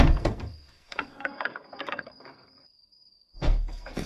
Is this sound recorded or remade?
remade